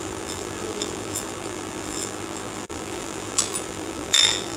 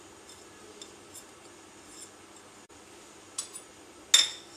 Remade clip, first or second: first